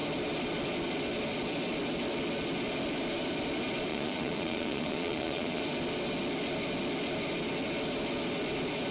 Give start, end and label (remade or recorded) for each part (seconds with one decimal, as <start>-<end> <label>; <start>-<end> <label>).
0.0-3.9 recorded; 3.9-5.6 remade; 5.6-8.9 recorded

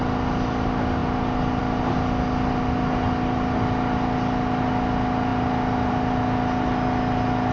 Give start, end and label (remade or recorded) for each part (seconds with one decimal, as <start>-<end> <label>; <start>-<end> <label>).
0.0-7.5 recorded

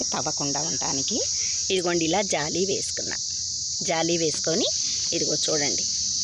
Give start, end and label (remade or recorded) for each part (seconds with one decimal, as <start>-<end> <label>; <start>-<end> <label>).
0.0-6.2 recorded